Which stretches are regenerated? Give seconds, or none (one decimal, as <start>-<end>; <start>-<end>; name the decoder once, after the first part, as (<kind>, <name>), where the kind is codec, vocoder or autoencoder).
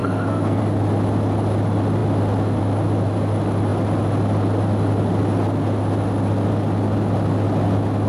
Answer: 0.0-0.6 (codec, SNAC)